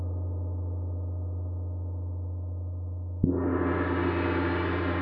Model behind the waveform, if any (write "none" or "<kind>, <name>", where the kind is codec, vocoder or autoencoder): none